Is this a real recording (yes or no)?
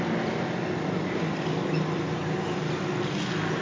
yes